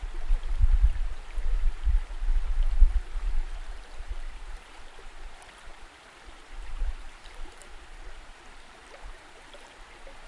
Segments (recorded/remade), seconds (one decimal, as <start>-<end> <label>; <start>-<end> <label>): 0.0-2.3 remade; 2.3-3.7 recorded; 3.7-10.3 remade